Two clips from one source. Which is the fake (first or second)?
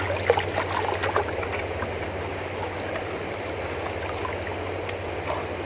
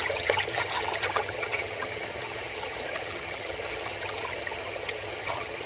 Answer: second